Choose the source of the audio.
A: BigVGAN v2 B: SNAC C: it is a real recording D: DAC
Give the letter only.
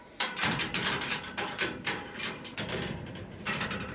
A